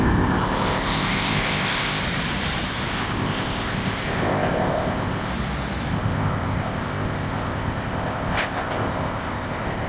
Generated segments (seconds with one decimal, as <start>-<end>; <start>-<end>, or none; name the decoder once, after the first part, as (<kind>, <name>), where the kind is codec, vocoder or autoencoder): 0.0-2.0 (codec, ZipCodec); 2.9-5.3; 5.9-9.9